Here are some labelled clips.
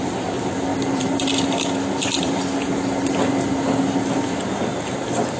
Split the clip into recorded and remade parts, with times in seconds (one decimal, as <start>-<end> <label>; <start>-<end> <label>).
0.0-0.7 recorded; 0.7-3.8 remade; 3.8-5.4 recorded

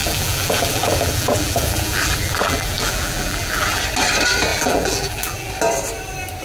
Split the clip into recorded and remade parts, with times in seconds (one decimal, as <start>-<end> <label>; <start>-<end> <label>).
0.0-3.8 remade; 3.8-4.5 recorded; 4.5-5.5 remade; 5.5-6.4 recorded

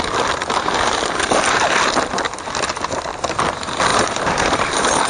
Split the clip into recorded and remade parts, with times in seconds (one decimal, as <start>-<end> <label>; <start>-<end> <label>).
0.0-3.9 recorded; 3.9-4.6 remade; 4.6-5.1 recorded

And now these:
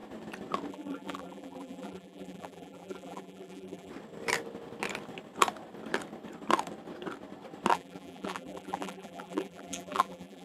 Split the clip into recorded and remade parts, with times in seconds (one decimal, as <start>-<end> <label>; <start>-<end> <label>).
0.0-0.7 recorded; 0.7-3.9 remade; 3.9-7.7 recorded; 7.7-10.4 remade

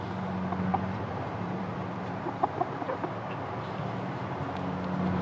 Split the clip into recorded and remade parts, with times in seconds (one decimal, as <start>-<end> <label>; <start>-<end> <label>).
0.0-0.7 recorded; 0.7-3.8 remade; 3.8-5.2 recorded

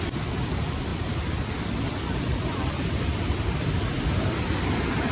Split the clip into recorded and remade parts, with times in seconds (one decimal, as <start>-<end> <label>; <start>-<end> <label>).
0.0-0.9 recorded; 0.9-4.0 remade; 4.0-5.1 recorded

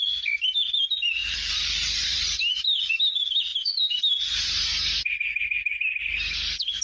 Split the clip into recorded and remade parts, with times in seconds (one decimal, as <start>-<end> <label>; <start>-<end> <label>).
0.0-1.2 recorded; 1.2-3.0 remade; 3.0-3.5 recorded; 3.5-4.0 remade; 4.0-6.8 recorded